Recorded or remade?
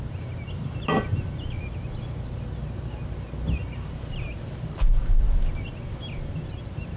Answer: recorded